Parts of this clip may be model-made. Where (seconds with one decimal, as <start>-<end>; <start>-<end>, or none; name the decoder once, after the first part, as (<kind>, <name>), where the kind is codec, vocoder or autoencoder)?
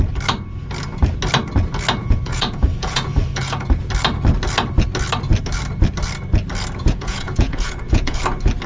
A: 2.0-3.9 (vocoder, Vocos); 6.8-8.2